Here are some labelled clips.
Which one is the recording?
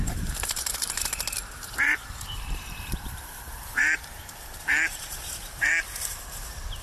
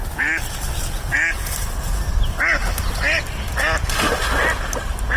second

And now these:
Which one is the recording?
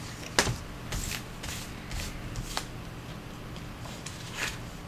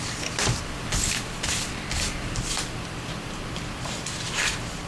first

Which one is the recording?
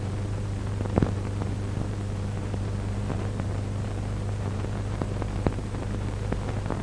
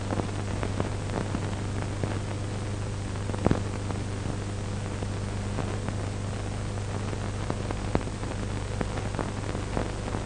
second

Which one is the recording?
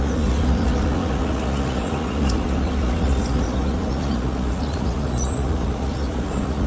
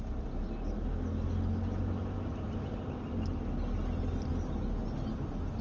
second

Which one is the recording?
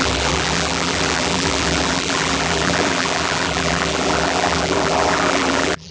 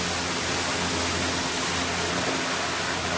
second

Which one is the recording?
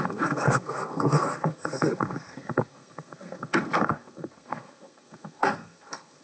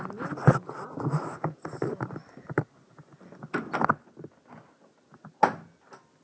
second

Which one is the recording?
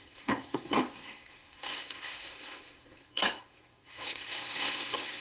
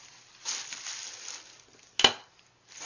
second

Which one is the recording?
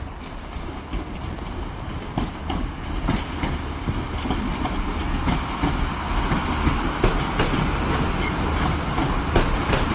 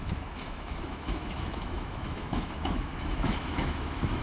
first